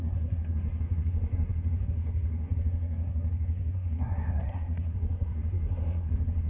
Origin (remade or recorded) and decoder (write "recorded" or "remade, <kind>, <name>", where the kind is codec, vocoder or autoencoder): remade, codec, SNAC